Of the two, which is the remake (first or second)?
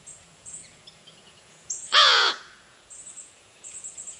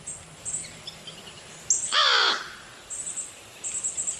first